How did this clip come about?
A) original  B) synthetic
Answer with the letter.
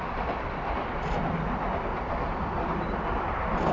B